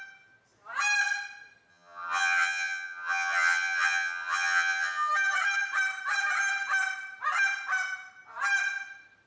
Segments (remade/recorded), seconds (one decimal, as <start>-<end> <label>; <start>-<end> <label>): 0.0-1.7 recorded; 1.7-5.1 remade; 5.1-9.3 recorded